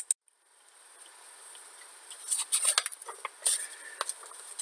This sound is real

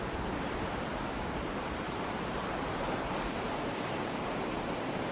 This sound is fake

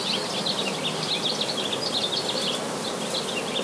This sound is real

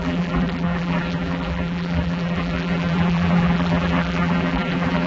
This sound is fake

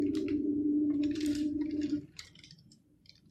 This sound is fake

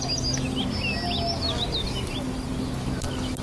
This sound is real